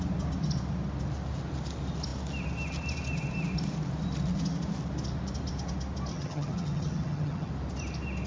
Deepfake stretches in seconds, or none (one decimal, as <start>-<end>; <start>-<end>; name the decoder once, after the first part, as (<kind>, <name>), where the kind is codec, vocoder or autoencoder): 6.1-7.5 (vocoder, HiFi-GAN)